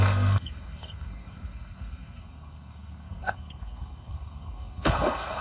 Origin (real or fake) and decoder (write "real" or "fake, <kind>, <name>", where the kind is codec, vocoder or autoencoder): fake, codec, SNAC